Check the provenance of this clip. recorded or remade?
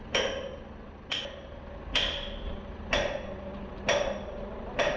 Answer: recorded